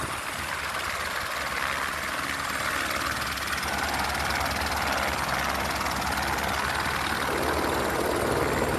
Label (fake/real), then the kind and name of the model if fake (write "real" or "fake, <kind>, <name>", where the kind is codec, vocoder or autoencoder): real